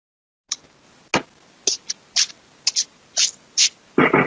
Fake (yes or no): no